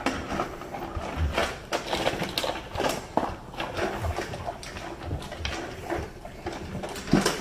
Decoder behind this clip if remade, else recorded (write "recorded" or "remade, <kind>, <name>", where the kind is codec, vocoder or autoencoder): recorded